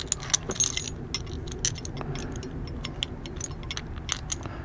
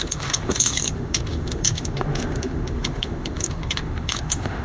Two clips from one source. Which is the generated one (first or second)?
second